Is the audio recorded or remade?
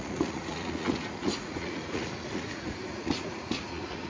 remade